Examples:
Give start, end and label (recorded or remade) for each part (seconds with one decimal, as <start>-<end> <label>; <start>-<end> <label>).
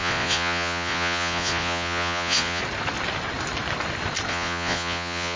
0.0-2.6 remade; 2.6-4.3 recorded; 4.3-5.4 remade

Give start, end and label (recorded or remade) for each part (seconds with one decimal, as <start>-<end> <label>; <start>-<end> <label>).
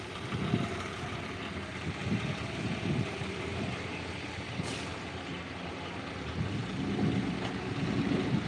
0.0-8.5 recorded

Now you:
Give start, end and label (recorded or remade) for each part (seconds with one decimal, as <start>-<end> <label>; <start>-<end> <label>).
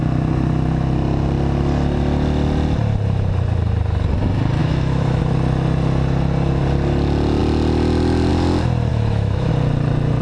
0.0-4.6 recorded; 4.6-5.2 remade; 5.2-8.9 recorded; 8.9-9.5 remade; 9.5-10.2 recorded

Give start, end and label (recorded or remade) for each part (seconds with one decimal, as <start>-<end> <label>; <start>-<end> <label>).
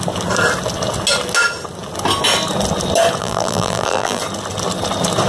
0.0-3.2 recorded; 3.2-4.2 remade; 4.2-5.3 recorded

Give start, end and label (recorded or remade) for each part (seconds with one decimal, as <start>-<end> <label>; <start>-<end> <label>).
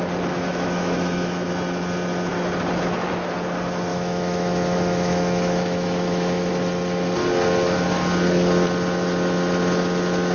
0.0-0.5 recorded; 0.5-1.5 remade; 1.5-3.9 recorded; 3.9-6.5 remade; 6.5-10.3 recorded